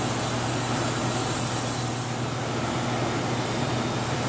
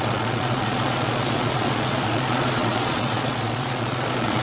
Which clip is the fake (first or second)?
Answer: second